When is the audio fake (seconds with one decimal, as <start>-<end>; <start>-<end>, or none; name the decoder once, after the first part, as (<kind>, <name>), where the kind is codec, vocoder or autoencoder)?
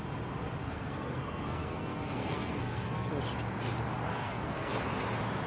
0.6-3.1 (codec, SNAC); 4.1-4.7